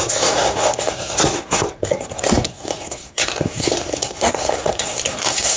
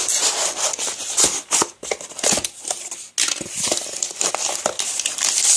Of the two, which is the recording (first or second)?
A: second